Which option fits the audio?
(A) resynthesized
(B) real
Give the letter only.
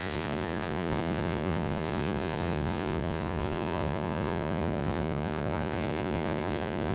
A